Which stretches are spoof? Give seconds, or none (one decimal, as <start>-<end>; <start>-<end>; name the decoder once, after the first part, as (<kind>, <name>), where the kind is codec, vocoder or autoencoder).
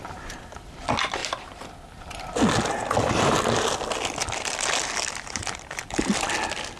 5.4-6.1 (vocoder, BigVGAN v2)